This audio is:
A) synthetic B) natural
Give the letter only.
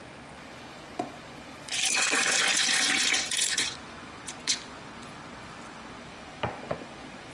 A